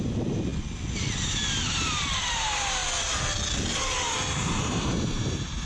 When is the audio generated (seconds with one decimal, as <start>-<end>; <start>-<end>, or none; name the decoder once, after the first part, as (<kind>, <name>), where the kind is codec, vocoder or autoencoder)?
0.0-0.5 (vocoder, BigVGAN v2); 2.2-2.8; 4.6-5.7